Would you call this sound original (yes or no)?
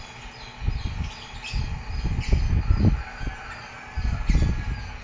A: yes